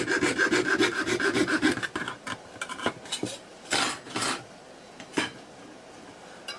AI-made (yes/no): no